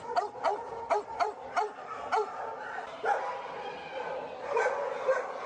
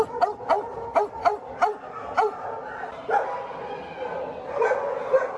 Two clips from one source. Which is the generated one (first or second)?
first